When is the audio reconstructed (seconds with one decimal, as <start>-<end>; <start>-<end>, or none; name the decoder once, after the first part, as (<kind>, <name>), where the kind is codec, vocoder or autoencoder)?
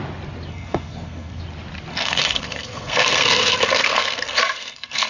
0.5-1.4 (codec, SNAC); 1.9-5.1